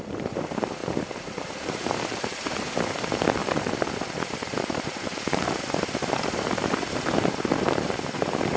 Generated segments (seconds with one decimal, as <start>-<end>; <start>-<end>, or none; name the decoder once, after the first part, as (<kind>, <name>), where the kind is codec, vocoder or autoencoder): 0.8-2.7 (vocoder, BigVGAN v2); 3.4-7.5